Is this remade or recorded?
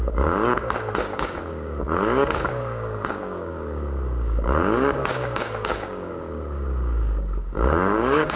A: remade